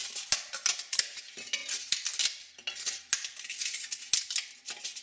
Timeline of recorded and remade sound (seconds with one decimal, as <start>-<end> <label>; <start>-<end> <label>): 0.0-5.0 recorded